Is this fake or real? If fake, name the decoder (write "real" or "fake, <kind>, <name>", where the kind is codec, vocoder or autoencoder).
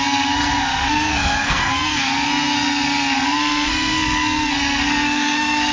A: fake, codec, SNAC